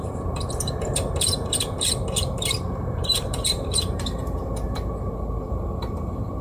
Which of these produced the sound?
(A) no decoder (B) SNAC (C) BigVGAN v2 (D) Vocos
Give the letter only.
C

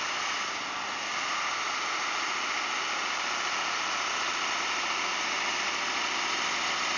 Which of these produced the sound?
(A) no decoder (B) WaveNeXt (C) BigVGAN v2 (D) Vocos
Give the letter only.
C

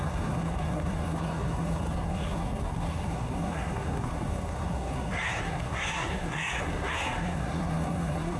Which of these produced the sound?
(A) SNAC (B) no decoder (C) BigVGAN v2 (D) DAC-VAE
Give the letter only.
A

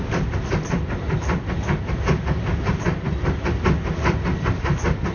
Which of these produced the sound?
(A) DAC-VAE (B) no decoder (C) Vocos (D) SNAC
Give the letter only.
B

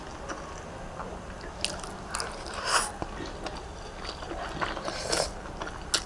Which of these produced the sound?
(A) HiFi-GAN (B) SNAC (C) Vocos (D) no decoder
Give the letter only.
D